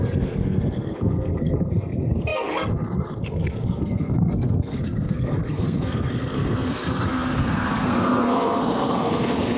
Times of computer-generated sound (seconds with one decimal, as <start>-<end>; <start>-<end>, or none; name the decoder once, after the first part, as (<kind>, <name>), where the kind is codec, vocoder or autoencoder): 0.0-9.6 (codec, SNAC)